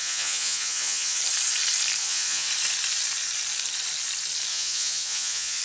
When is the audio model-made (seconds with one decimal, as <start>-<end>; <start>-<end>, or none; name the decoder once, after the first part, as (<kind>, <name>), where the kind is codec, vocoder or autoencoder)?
0.0-1.2 (vocoder, Vocos); 2.0-2.5; 4.5-5.6